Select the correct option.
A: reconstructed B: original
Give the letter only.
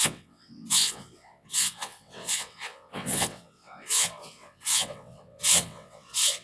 A